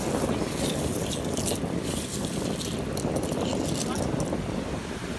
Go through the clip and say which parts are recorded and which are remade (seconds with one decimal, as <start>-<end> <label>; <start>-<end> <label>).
0.0-5.2 recorded